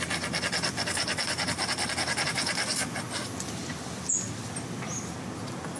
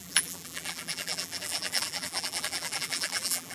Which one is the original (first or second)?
first